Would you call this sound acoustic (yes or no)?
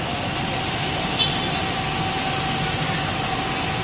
yes